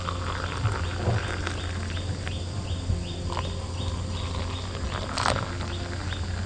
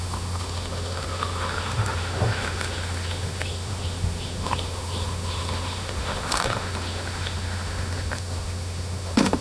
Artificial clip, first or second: second